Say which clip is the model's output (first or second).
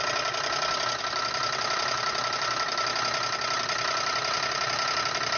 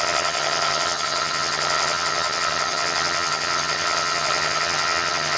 second